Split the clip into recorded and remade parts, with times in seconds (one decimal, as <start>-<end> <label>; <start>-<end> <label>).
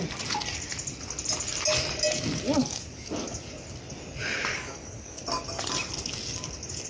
0.0-2.6 recorded; 2.6-3.1 remade; 3.1-4.5 recorded; 4.5-5.2 remade; 5.2-6.9 recorded